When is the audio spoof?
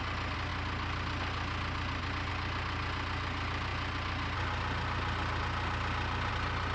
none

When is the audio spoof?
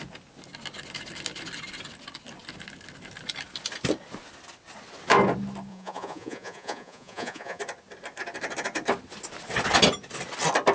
5.7-7.6 (vocoder, Vocos)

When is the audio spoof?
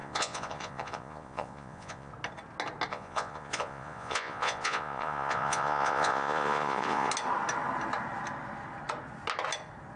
0.0-2.1 (vocoder, Vocos); 2.9-7.1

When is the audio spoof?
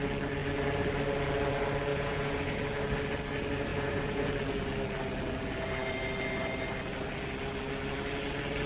1.9-2.6 (vocoder, Vocos); 3.7-4.3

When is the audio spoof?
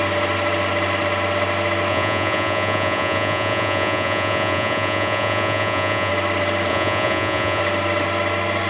1.9-6.1 (vocoder, Vocos); 6.7-7.6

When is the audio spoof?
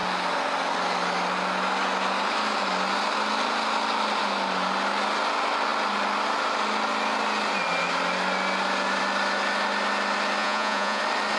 10.4-11.0 (vocoder, Vocos)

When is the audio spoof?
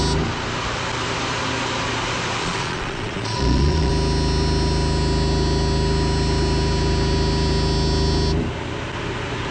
2.4-3.9 (vocoder, Vocos)